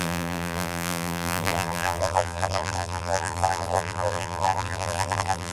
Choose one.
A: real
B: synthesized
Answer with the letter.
B